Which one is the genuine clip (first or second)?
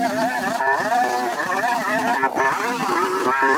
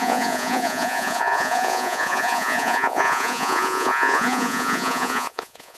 first